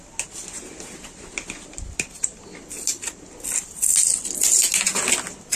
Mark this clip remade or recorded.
recorded